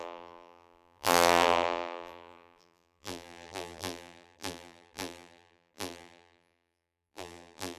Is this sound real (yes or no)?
no